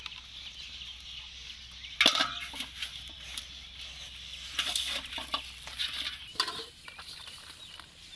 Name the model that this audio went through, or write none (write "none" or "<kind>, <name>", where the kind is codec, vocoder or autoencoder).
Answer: none